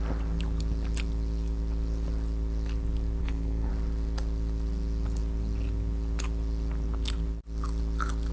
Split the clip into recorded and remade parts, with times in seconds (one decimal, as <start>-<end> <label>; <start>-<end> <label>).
0.0-3.2 recorded; 3.2-3.7 remade; 3.7-8.3 recorded